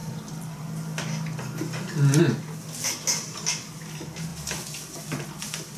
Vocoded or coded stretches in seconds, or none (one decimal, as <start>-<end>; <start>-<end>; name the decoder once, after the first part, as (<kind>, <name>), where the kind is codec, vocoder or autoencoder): none